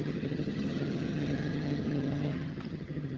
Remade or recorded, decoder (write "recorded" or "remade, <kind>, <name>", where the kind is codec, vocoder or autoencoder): remade, vocoder, HiFi-GAN